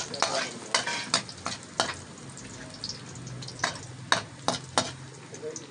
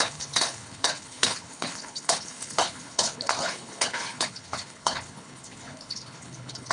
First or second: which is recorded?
first